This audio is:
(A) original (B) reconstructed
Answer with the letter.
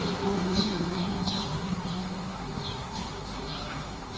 B